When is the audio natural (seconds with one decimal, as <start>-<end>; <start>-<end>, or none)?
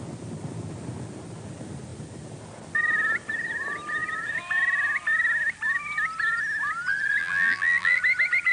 0.0-7.2; 8.0-8.5